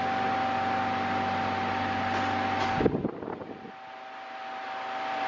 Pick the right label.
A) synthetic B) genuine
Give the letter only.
B